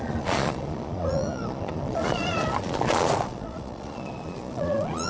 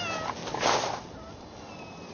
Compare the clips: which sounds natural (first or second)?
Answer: second